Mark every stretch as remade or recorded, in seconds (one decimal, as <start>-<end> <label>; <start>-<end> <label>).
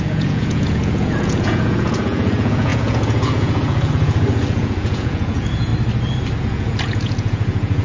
0.0-5.7 remade; 5.7-6.4 recorded; 6.4-7.8 remade